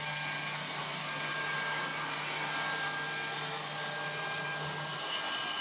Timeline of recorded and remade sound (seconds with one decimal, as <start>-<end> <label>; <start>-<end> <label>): 0.0-5.6 recorded